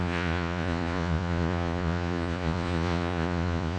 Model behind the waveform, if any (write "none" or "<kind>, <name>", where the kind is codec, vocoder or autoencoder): vocoder, Vocos